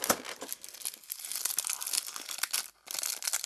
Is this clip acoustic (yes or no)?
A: yes